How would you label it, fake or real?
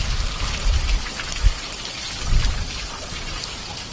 fake